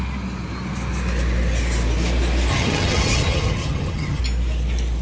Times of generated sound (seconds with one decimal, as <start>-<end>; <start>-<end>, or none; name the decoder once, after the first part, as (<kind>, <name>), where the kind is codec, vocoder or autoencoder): 2.5-4.2 (vocoder, HiFi-GAN)